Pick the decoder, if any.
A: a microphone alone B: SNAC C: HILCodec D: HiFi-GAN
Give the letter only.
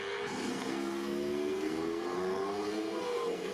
B